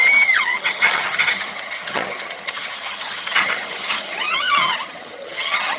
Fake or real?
fake